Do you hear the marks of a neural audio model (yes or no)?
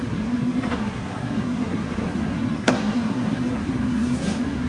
yes